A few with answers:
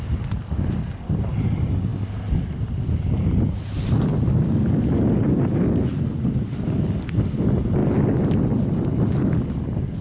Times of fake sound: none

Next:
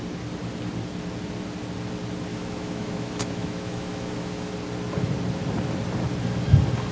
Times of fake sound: 2.3-4.5 (autoencoder, DAC-VAE)

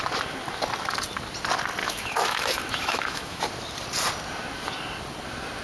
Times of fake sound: 1.8-3.4 (autoencoder, DAC-VAE)

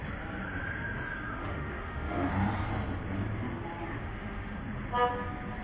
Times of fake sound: 1.4-2.3 (autoencoder, DAC-VAE); 4.0-4.6

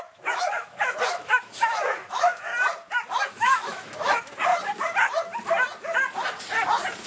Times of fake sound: 0.0-2.5 (autoencoder, DAC-VAE); 3.3-4.5

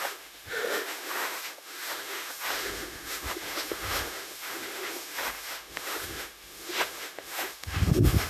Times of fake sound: 0.0-8.3 (autoencoder, DAC-VAE)